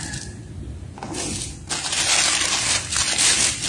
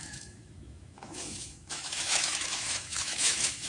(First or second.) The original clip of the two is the first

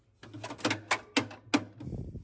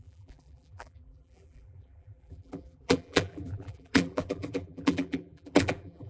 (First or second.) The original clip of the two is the first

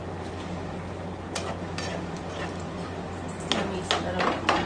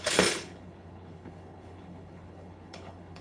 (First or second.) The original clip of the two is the first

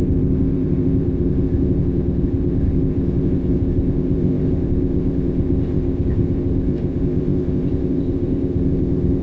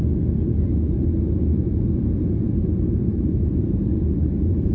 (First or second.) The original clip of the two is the second